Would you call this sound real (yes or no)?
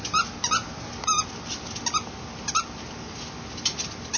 yes